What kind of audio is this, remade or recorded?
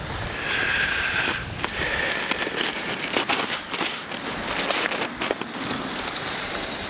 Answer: recorded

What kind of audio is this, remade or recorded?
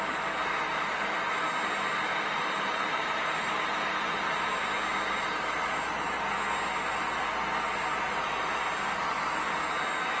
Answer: recorded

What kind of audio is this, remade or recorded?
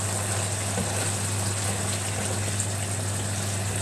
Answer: remade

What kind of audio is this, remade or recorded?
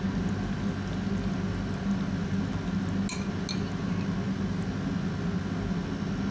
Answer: recorded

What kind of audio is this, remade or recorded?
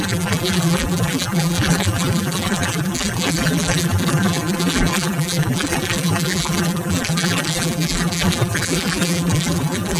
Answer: remade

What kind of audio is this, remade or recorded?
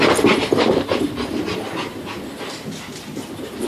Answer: remade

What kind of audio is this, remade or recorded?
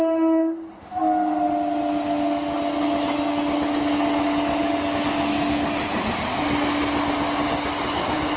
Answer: recorded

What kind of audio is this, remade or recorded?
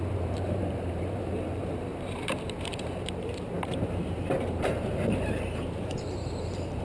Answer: remade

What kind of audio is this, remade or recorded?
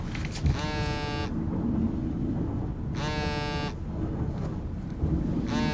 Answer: recorded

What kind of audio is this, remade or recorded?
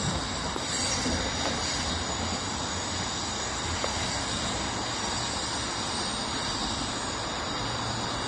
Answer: recorded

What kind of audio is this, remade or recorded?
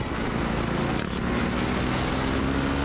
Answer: recorded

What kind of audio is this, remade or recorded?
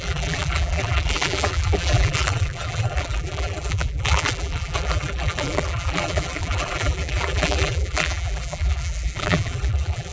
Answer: remade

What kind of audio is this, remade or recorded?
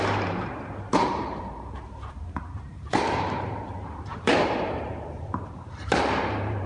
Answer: remade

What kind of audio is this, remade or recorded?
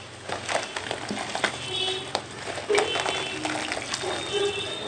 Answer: recorded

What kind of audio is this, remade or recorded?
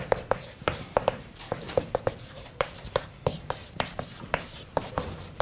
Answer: remade